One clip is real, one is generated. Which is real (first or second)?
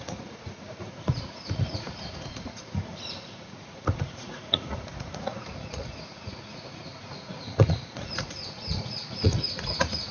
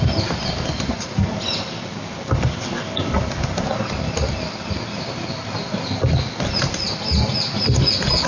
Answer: second